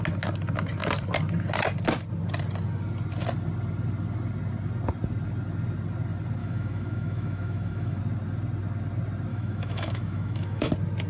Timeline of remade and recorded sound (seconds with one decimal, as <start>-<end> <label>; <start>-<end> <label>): 0.0-6.4 recorded; 6.4-8.0 remade; 8.0-9.3 recorded; 9.3-10.7 remade; 10.7-11.1 recorded